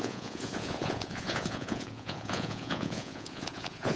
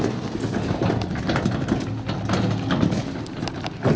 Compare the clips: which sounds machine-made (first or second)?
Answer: first